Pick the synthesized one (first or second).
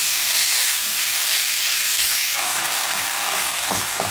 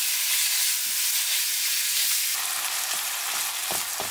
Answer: first